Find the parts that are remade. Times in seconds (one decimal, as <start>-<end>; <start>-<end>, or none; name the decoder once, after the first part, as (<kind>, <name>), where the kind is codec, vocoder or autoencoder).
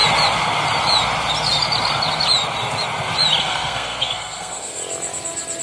3.4-4.8 (codec, SNAC)